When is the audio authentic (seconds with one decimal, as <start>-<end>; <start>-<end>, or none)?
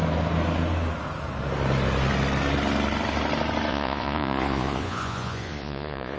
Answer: 0.0-3.7